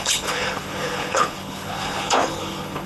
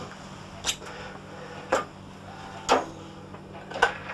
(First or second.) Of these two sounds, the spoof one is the first